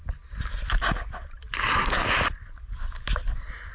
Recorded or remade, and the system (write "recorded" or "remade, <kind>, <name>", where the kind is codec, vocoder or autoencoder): recorded